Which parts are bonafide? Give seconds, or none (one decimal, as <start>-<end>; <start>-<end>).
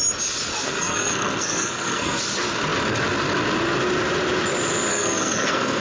0.0-0.5; 2.2-4.9